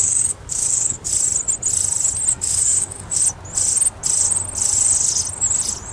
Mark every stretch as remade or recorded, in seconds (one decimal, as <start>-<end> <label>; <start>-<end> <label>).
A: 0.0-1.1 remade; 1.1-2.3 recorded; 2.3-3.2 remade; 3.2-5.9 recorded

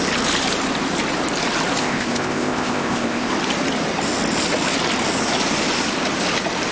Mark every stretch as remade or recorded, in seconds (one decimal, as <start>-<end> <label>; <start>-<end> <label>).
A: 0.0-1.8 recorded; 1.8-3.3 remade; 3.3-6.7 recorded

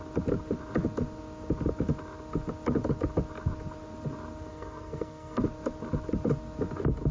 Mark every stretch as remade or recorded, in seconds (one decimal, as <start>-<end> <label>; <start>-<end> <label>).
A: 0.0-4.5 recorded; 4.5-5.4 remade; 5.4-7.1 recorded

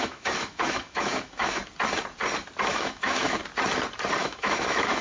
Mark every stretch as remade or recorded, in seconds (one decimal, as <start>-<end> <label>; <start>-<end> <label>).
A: 0.0-1.6 remade; 1.6-2.7 recorded; 2.7-3.4 remade; 3.4-4.2 recorded; 4.2-5.0 remade

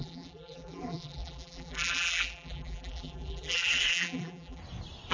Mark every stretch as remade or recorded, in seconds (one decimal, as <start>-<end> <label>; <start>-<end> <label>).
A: 0.0-4.6 remade; 4.6-5.1 recorded